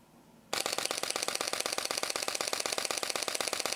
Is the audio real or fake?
real